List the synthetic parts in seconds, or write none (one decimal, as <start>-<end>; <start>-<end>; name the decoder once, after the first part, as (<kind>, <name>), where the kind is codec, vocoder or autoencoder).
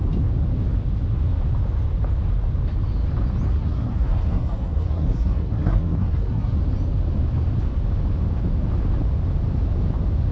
3.5-6.6 (codec, SNAC)